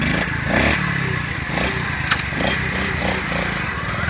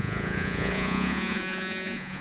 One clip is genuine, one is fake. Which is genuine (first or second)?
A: first